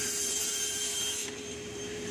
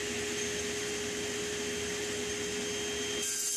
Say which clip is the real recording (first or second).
second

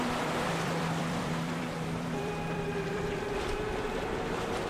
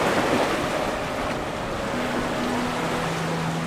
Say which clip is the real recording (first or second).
second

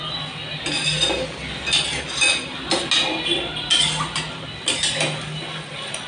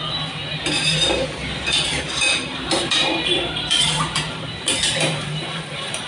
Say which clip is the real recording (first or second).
first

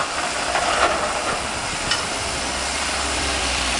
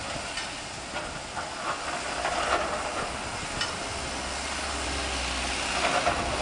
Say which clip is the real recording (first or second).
second